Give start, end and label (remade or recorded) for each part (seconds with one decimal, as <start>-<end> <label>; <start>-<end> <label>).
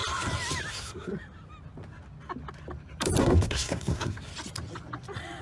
0.0-0.7 recorded; 0.7-1.1 remade; 1.1-3.2 recorded; 3.2-4.3 remade; 4.3-5.4 recorded